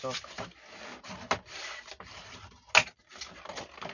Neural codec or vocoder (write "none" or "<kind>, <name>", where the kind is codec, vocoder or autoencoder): none